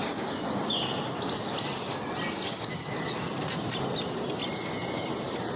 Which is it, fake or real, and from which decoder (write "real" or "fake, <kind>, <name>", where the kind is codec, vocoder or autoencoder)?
real